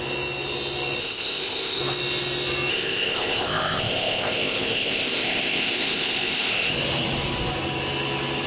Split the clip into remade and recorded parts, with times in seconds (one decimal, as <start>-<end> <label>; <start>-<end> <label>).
0.0-1.0 recorded; 1.0-1.8 remade; 1.8-2.7 recorded; 2.7-6.7 remade; 6.7-8.5 recorded